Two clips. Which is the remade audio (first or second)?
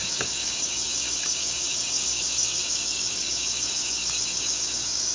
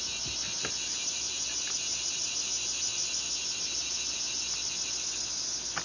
first